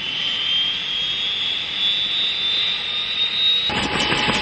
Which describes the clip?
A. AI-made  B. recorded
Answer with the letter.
B